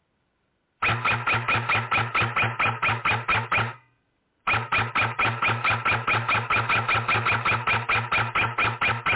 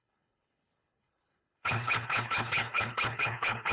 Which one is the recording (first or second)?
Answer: first